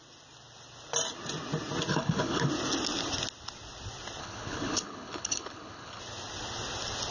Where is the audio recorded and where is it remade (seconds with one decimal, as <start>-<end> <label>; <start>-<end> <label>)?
0.0-1.9 recorded; 1.9-2.5 remade; 2.5-4.2 recorded; 4.2-6.0 remade; 6.0-7.1 recorded